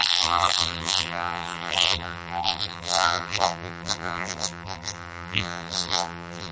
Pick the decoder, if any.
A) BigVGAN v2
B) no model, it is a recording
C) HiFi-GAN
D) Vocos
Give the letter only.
A